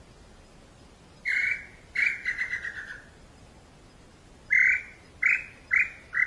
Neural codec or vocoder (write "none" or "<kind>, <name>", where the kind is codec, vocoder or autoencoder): none